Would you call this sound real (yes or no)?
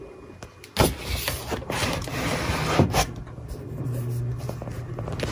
yes